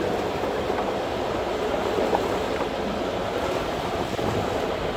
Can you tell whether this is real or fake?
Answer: real